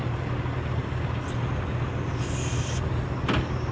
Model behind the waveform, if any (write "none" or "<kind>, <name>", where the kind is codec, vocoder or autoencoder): none